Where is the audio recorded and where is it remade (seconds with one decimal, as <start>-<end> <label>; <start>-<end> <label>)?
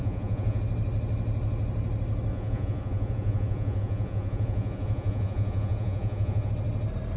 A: 0.0-0.6 remade; 0.6-2.3 recorded; 2.3-6.5 remade; 6.5-7.2 recorded